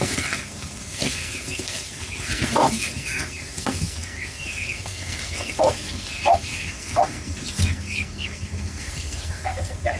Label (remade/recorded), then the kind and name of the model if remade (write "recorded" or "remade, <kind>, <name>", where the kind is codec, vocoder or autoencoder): remade, codec, SNAC